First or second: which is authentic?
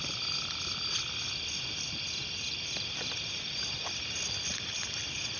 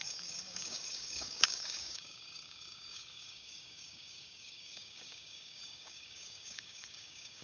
first